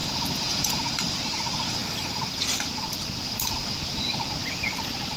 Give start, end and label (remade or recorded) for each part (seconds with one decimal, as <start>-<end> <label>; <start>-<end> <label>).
0.0-0.9 remade; 0.9-5.2 recorded